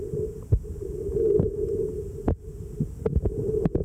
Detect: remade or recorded recorded